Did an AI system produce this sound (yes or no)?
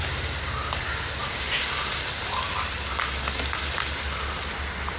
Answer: no